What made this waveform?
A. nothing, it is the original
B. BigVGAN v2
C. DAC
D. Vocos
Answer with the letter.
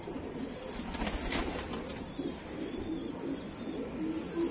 A